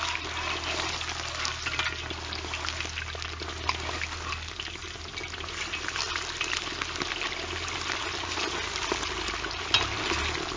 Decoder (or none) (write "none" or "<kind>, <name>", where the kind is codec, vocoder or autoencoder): none